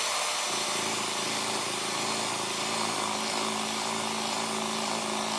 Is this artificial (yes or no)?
no